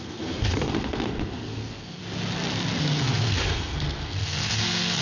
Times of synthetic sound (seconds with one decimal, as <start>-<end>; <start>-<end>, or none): 0.0-2.0; 2.8-5.0